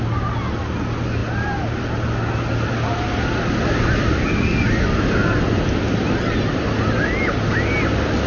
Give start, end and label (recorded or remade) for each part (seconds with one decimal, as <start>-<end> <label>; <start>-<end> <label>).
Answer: 0.0-8.3 recorded